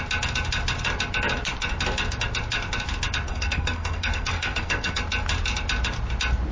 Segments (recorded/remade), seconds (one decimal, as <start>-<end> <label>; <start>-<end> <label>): 0.0-3.3 recorded; 3.3-5.0 remade; 5.0-6.5 recorded